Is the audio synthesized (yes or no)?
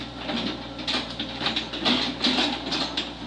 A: no